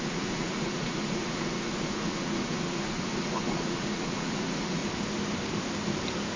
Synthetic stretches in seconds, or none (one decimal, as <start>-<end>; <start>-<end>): 0.0-4.8